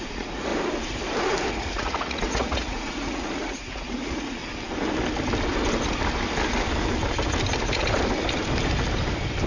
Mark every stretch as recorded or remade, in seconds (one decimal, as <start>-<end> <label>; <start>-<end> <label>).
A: 0.0-0.5 remade; 0.5-1.5 recorded; 1.5-4.4 remade; 4.4-9.5 recorded